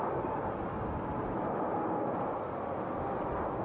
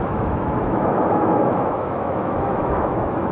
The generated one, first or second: second